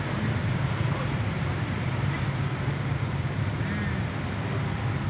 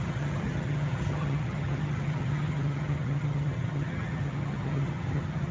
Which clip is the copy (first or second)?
second